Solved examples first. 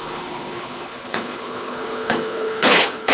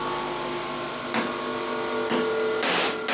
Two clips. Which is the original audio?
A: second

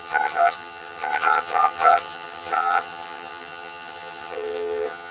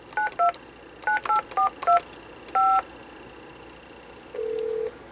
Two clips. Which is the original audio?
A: second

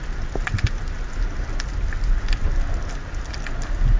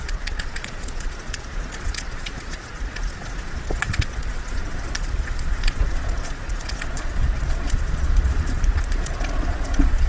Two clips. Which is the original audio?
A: first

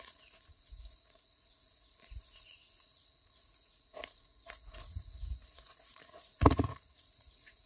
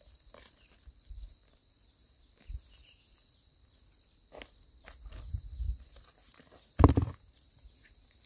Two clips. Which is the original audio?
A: second